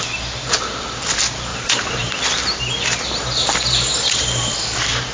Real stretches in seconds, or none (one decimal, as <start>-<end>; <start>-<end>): 0.0-1.5; 2.1-5.1